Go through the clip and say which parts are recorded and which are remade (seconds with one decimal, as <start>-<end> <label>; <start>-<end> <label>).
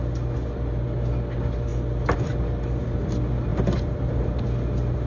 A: 0.0-5.1 recorded